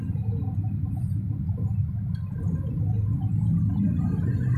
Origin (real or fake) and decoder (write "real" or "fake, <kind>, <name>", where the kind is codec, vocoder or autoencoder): real